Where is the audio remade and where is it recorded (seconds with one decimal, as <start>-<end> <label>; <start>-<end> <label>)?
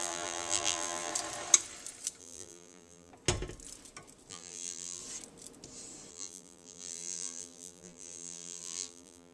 0.0-1.1 remade; 1.1-2.2 recorded; 2.2-3.1 remade; 3.1-4.3 recorded; 4.3-5.0 remade; 5.0-6.1 recorded; 6.1-9.3 remade